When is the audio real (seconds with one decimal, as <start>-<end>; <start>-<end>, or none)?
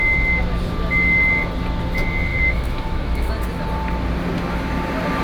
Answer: 0.0-2.3; 3.3-5.2